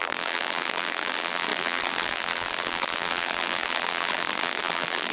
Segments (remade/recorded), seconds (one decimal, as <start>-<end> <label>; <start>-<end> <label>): 0.0-5.1 remade